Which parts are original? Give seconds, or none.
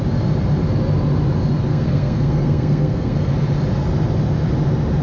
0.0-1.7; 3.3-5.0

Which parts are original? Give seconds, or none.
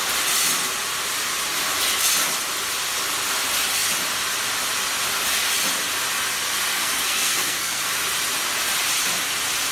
0.0-6.7; 7.9-9.7